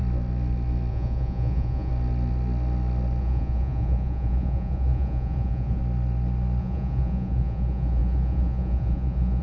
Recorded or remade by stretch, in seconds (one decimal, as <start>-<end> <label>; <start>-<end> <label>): 0.0-0.9 recorded; 0.9-1.9 remade; 1.9-3.2 recorded; 3.2-5.8 remade; 5.8-6.6 recorded; 6.6-9.4 remade